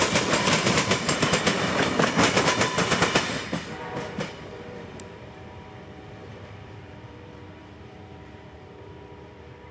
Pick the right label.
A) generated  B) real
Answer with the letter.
A